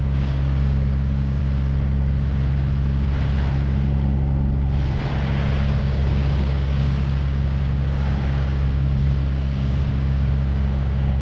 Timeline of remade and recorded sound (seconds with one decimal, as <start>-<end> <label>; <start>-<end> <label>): 0.0-1.4 remade; 1.4-5.8 recorded; 5.8-11.2 remade